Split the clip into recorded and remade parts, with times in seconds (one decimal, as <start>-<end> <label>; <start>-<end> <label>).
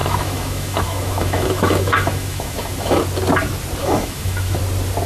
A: 0.0-3.0 remade; 3.0-3.8 recorded; 3.8-4.6 remade; 4.6-5.1 recorded